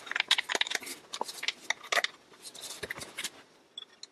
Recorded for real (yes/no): yes